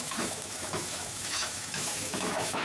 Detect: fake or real fake